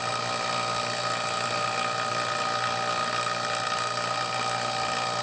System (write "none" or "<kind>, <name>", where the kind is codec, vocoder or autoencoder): none